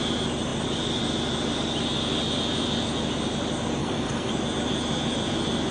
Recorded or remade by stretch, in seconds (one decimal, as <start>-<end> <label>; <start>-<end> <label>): 0.0-3.8 recorded; 3.8-4.3 remade; 4.3-5.7 recorded